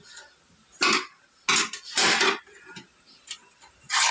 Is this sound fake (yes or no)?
no